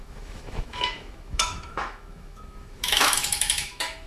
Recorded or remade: remade